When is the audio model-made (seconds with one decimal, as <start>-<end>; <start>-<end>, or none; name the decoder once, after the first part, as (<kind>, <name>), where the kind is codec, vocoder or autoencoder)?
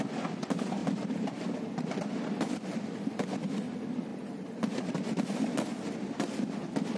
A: 0.8-3.5 (vocoder, BigVGAN v2)